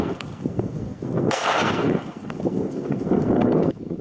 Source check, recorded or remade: remade